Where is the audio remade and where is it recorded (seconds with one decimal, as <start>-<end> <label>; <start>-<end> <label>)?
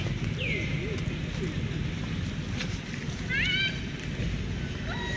0.0-5.2 recorded